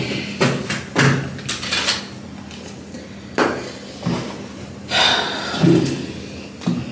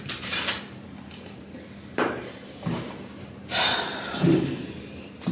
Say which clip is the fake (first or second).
second